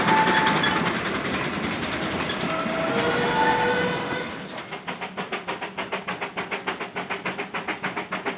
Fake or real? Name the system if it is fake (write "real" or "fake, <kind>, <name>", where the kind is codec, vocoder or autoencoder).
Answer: real